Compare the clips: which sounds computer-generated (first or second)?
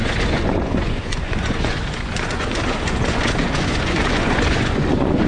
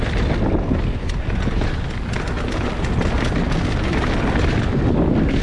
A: first